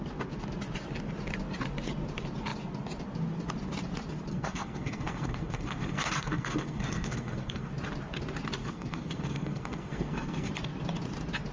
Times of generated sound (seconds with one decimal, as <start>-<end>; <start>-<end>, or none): 4.3-7.7; 8.6-10.5